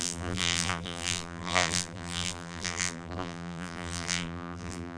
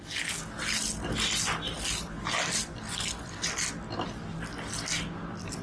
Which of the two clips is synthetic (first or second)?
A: first